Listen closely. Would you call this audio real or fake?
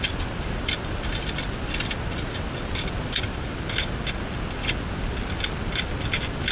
real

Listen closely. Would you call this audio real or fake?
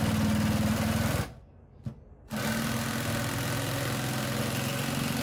real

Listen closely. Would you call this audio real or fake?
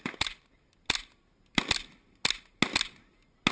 real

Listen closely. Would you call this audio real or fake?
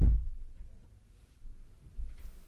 real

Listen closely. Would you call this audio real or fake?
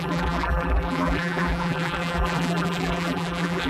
fake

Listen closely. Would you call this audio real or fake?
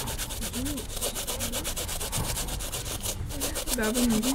real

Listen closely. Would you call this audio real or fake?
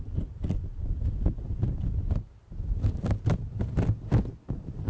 real